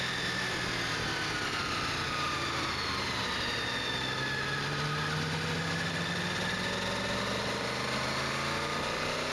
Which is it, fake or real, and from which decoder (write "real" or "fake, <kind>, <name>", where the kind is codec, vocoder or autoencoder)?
real